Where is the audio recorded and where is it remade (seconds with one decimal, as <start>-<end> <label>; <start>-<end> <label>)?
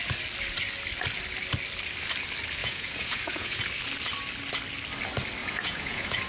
0.0-2.6 recorded; 2.6-3.6 remade; 3.6-5.4 recorded; 5.4-6.3 remade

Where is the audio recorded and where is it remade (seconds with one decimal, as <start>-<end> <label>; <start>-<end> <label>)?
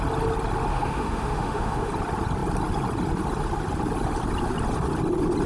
0.0-0.7 recorded; 0.7-1.9 remade; 1.9-5.5 recorded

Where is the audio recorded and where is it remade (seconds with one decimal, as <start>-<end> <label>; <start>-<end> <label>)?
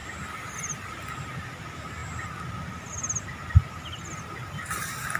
0.0-5.2 recorded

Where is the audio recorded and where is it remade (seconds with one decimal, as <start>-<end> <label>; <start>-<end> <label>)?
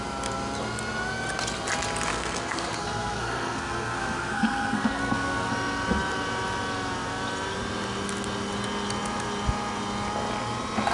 0.0-2.1 recorded; 2.1-5.5 remade; 5.5-10.9 recorded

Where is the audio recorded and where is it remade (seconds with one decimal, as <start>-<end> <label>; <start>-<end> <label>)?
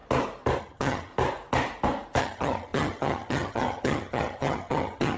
0.0-0.6 recorded; 0.6-1.1 remade; 1.1-2.2 recorded; 2.2-5.2 remade